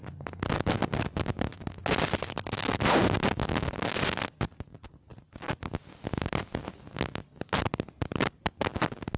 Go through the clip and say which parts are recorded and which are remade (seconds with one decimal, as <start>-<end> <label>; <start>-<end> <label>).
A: 0.0-9.2 recorded